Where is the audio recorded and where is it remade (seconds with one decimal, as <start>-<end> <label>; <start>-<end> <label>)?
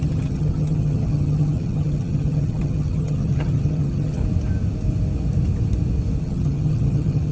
0.0-4.2 remade; 4.2-6.2 recorded; 6.2-7.3 remade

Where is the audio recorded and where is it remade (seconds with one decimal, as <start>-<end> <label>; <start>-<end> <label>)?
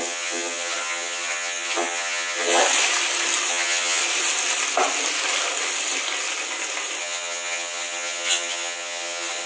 0.0-2.6 remade; 2.6-3.5 recorded; 3.5-4.0 remade; 4.0-7.0 recorded; 7.0-9.5 remade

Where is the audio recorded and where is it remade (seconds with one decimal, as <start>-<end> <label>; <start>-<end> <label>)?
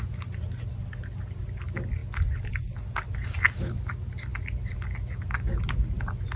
0.0-6.4 recorded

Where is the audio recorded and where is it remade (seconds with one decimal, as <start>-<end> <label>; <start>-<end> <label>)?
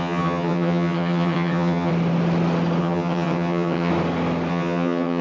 0.0-1.9 remade; 1.9-2.8 recorded; 2.8-3.9 remade; 3.9-4.5 recorded; 4.5-5.2 remade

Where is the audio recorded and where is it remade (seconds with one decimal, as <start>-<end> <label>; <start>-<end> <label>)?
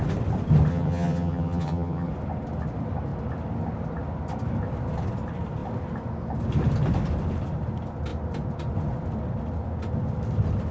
0.0-0.7 recorded; 0.7-2.1 remade; 2.1-10.7 recorded